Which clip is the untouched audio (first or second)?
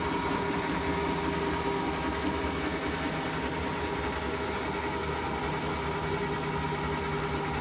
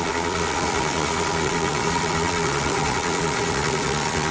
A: first